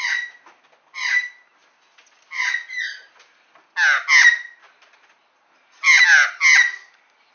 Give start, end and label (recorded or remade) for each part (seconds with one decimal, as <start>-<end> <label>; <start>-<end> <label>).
0.0-7.3 recorded